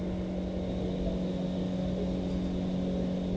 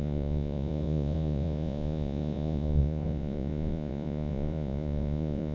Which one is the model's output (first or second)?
second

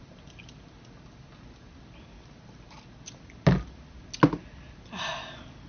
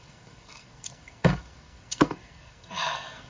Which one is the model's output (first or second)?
second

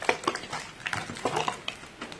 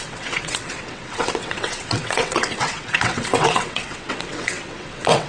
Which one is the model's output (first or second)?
second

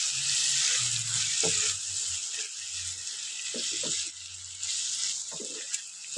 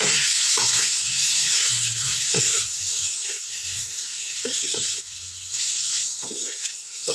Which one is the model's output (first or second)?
second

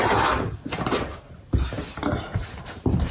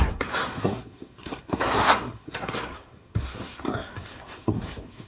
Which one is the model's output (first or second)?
second